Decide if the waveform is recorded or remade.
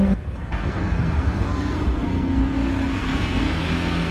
remade